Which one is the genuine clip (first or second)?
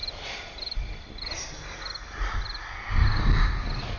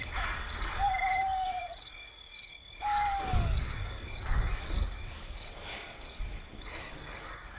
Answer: first